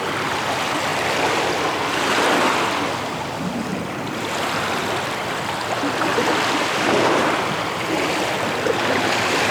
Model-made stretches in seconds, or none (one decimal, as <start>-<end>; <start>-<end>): 0.9-2.1; 3.7-8.3